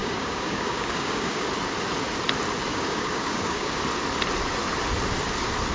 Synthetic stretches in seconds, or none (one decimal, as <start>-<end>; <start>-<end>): 0.0-1.5; 2.7-3.8